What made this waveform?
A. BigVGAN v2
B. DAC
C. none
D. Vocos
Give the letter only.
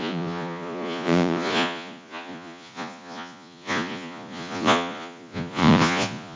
D